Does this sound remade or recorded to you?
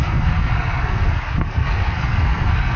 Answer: remade